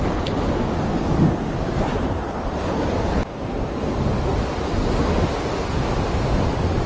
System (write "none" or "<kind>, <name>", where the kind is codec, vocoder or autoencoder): none